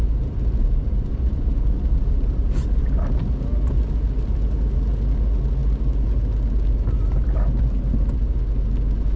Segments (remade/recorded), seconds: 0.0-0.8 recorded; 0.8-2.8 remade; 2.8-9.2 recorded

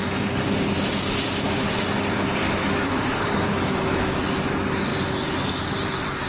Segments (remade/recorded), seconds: 0.0-2.4 recorded; 2.4-4.2 remade; 4.2-6.3 recorded

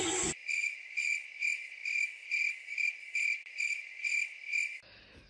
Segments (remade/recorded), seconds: 0.0-0.4 recorded; 0.4-1.4 remade; 1.4-5.3 recorded

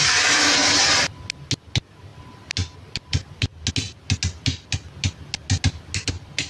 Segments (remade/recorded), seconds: 0.0-6.5 recorded